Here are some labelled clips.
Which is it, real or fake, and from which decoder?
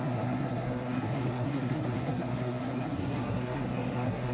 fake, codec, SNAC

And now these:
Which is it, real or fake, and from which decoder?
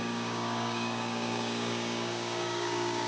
fake, codec, DAC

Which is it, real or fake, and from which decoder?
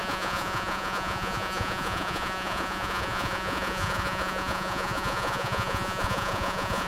fake, vocoder, Vocos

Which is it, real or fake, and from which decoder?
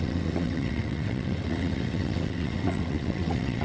fake, vocoder, WaveNeXt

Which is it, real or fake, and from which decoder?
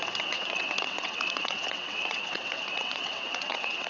fake, vocoder, WaveNeXt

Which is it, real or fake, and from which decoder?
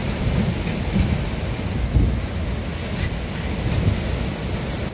real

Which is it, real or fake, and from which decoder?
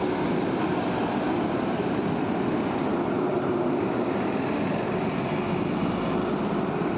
real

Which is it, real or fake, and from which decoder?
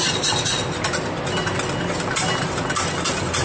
real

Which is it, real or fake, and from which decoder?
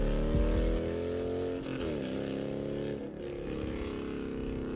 real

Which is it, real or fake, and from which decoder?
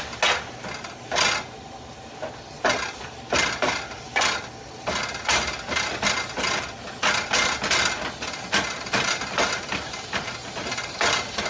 real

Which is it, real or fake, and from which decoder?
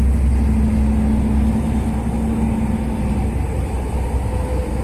real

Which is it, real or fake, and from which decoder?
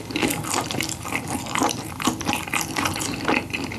fake, vocoder, BigVGAN v2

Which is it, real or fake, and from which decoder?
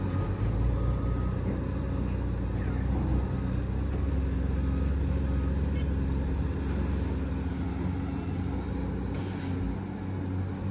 real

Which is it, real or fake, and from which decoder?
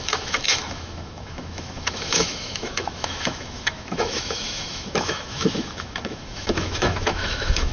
fake, autoencoder, DAC-VAE